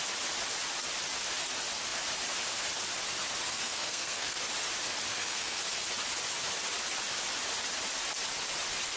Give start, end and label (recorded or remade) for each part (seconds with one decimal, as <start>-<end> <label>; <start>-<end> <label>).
0.0-3.5 recorded; 3.5-4.4 remade; 4.4-5.1 recorded; 5.1-5.6 remade; 5.6-9.0 recorded